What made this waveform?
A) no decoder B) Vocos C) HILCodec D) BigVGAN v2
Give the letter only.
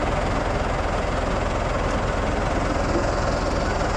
A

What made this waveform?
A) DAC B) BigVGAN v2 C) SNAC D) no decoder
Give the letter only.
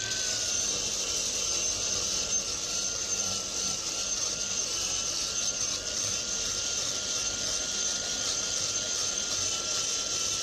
B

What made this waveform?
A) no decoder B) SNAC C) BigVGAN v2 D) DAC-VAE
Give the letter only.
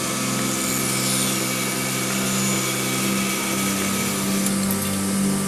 A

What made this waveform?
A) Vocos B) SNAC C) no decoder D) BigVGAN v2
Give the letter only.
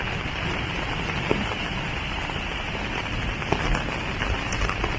C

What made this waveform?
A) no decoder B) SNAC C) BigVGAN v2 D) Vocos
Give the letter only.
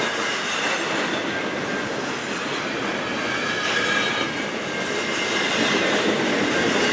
A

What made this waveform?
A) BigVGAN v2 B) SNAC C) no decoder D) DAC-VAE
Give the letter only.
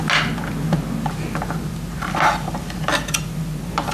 C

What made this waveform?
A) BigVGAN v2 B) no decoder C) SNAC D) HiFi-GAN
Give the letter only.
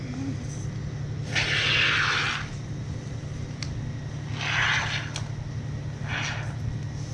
B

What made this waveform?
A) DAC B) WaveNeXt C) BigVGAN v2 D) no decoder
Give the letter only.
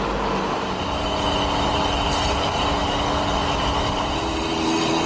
D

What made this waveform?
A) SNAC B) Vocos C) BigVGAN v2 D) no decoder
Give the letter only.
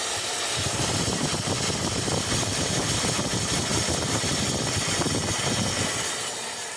C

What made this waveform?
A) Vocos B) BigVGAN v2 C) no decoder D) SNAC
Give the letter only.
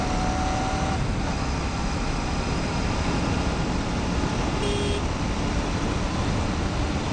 C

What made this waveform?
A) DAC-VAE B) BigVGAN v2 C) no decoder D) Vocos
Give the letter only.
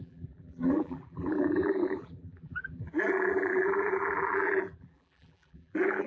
B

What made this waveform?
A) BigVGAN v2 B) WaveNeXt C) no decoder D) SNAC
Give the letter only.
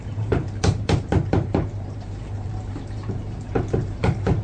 A